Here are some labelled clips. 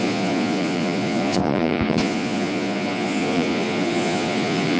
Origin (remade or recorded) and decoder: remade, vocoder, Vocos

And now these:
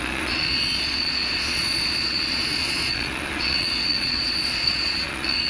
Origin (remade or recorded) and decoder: remade, vocoder, Vocos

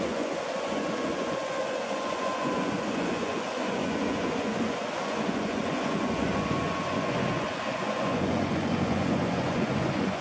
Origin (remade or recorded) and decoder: remade, vocoder, Vocos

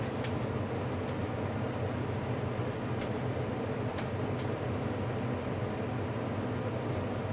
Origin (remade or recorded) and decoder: recorded